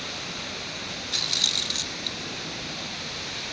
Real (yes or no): yes